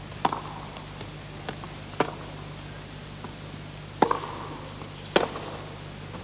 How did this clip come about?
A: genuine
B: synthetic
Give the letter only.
A